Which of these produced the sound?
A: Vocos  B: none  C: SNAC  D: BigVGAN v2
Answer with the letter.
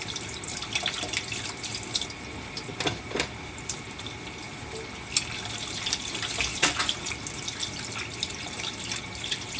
B